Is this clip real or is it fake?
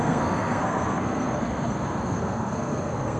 fake